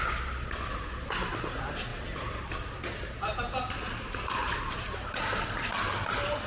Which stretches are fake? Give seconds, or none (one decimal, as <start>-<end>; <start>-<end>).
none